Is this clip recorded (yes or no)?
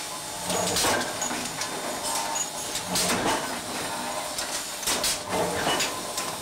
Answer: yes